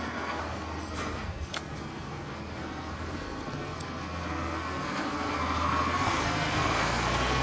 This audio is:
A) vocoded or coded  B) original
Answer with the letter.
A